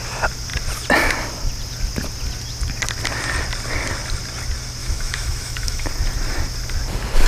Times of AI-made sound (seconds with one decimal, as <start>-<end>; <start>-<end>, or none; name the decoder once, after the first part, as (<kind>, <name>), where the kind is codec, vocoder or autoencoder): 4.8-5.9 (autoencoder, DAC-VAE)